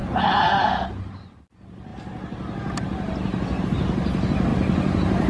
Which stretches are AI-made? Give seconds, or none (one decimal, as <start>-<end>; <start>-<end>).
0.0-0.9